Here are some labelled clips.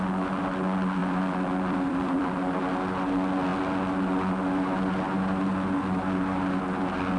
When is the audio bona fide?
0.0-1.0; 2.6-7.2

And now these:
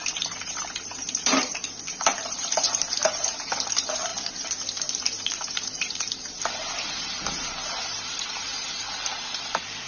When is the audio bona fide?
none

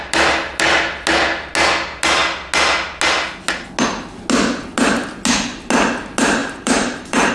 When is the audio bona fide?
0.0-6.4

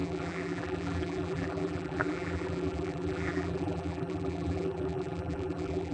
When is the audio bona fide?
none